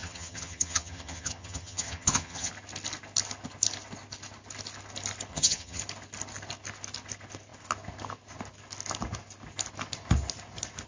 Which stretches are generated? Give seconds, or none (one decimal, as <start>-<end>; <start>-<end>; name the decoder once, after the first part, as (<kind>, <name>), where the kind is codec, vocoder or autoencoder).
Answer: 0.0-2.5 (vocoder, HiFi-GAN); 5.3-5.8